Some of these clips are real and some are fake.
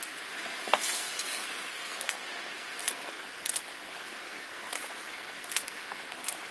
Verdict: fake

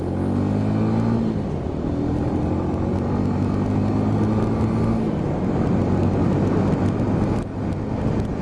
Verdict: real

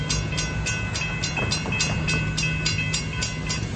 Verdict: real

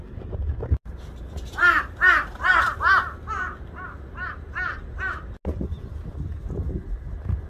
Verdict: real